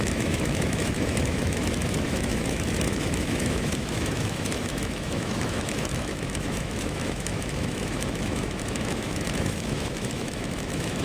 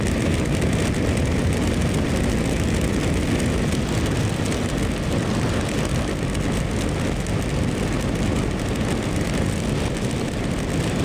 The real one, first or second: second